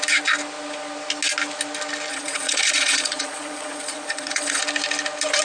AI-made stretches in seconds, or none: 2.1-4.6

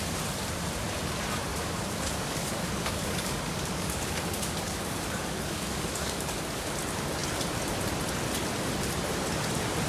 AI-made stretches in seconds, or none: 1.5-6.7

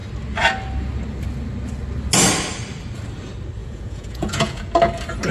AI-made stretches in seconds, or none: 3.6-4.7

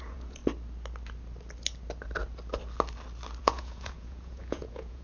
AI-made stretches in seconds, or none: 0.0-0.4; 3.4-5.0

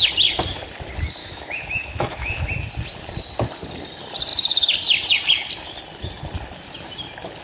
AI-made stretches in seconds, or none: 1.2-2.5

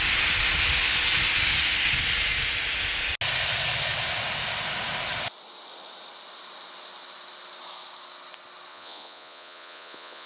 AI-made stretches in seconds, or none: 8.7-10.3